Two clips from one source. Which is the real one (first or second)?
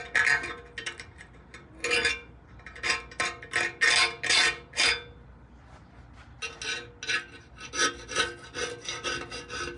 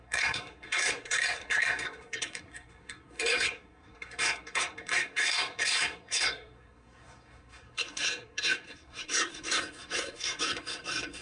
first